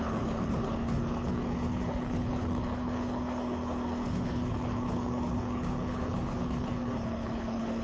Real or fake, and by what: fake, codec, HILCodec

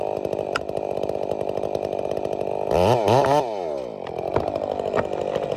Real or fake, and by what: real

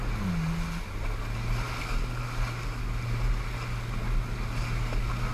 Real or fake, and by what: real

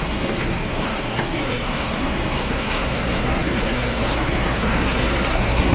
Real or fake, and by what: fake, codec, SNAC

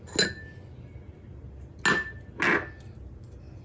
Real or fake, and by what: real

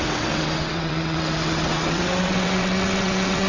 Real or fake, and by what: fake, vocoder, WaveNeXt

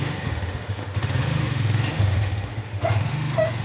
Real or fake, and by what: fake, autoencoder, DAC-VAE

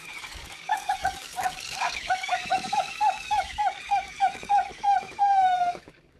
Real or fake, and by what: fake, codec, DAC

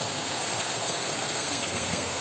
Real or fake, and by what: fake, codec, SNAC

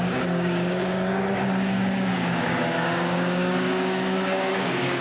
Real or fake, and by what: fake, codec, DAC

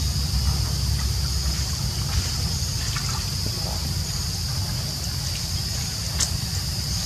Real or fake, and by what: real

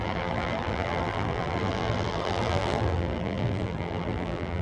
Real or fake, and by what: fake, vocoder, BigVGAN v2